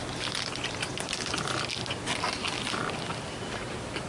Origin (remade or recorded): remade